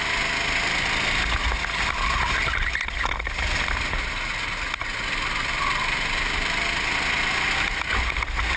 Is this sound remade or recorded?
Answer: recorded